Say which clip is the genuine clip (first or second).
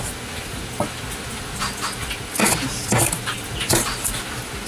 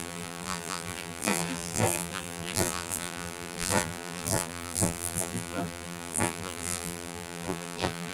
first